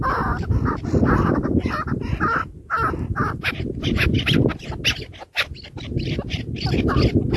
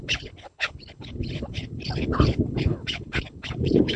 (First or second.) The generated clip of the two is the second